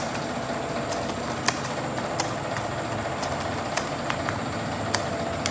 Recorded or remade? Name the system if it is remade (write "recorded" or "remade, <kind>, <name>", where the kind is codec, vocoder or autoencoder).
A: recorded